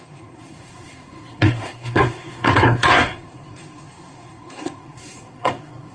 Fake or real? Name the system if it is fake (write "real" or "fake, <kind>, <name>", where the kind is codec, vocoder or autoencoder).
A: fake, codec, SNAC